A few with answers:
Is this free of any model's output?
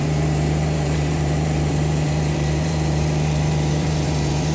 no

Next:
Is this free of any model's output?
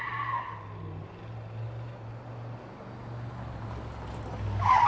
yes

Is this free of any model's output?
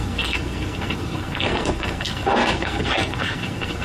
no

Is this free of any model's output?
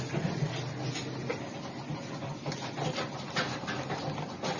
yes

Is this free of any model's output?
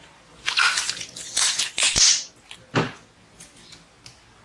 yes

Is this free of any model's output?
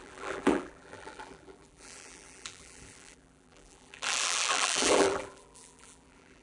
no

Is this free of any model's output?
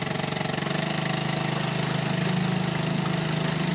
yes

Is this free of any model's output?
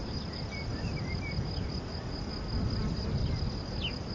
yes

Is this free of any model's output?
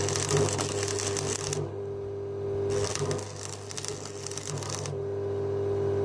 yes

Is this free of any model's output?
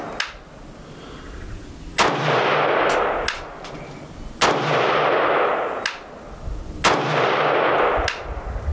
yes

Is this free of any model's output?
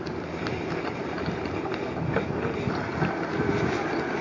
yes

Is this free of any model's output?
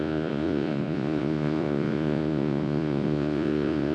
no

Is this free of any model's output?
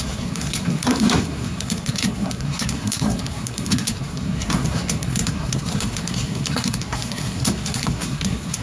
no